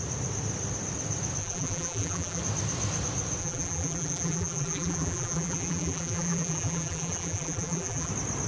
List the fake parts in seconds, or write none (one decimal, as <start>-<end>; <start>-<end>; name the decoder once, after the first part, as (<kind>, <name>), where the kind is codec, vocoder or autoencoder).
1.4-2.4 (vocoder, BigVGAN v2); 3.4-8.1

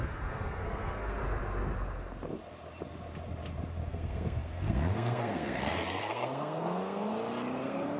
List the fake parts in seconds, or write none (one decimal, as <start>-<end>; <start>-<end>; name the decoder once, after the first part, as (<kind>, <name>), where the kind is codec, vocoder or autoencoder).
0.0-1.2 (codec, SNAC); 3.9-7.1; 7.6-8.0